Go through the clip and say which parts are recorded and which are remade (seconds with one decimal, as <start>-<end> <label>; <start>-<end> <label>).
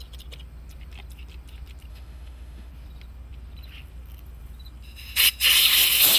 0.0-1.9 recorded; 1.9-2.7 remade; 2.7-6.2 recorded